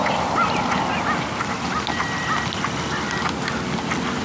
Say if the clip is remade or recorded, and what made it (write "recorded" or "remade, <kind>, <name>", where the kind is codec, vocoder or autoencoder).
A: recorded